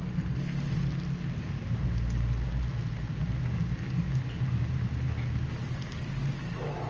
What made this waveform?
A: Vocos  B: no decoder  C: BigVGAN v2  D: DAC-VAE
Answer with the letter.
B